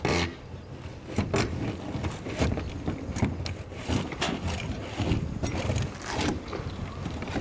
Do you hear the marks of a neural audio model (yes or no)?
no